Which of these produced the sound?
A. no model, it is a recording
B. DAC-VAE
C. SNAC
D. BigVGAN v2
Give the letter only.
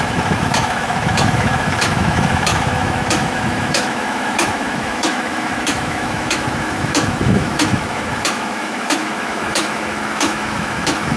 B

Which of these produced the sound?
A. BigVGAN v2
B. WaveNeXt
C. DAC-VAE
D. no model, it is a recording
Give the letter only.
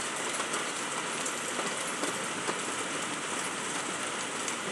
D